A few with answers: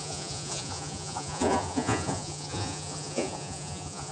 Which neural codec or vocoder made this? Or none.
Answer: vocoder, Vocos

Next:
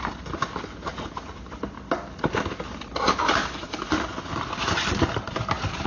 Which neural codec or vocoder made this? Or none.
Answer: none